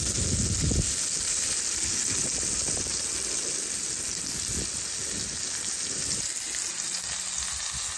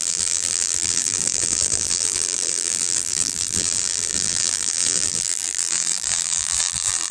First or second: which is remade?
second